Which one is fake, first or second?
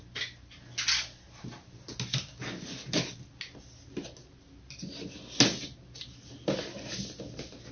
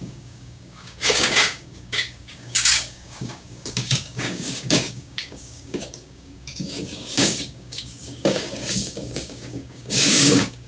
second